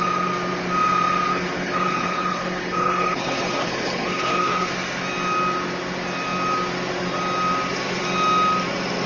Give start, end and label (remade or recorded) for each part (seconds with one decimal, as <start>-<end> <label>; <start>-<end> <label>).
0.0-1.3 recorded; 1.3-4.7 remade; 4.7-9.1 recorded